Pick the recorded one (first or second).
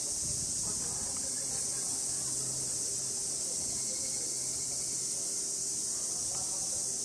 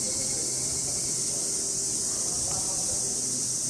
first